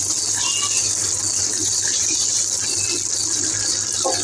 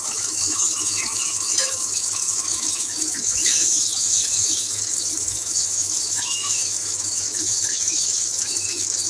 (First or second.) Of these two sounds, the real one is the first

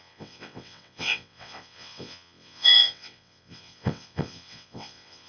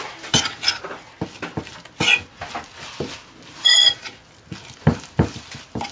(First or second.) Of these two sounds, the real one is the second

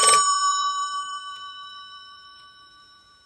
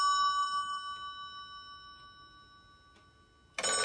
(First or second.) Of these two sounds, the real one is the second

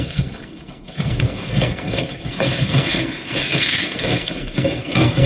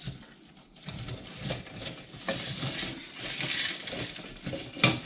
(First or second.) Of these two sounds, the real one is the second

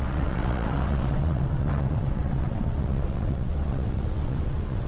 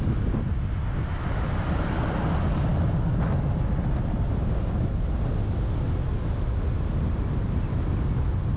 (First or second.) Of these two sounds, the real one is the second